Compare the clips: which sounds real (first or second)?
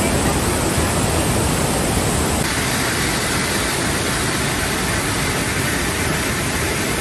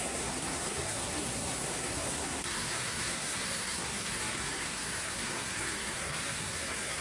first